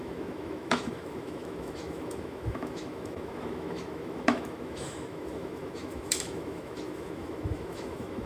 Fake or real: fake